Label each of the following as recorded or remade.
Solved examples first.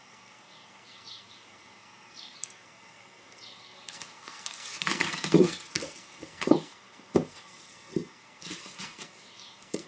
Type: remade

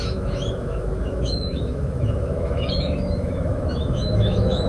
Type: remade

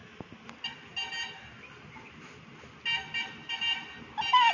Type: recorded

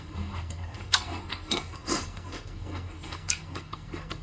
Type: remade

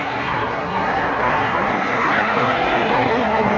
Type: remade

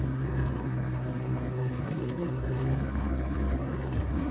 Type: remade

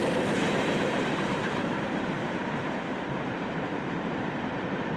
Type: remade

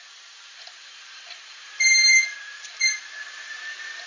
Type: remade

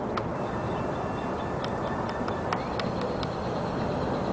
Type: recorded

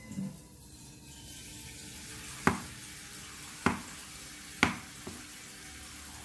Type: recorded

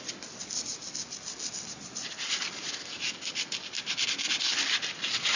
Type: recorded